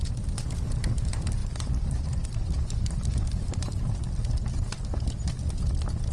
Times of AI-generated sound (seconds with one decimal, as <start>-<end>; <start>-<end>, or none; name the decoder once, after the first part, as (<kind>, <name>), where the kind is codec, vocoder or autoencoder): 1.4-3.8 (vocoder, BigVGAN v2)